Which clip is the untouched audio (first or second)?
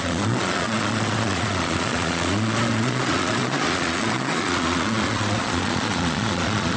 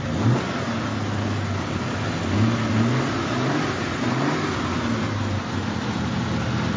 second